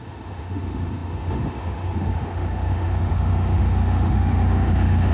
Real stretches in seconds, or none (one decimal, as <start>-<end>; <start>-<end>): none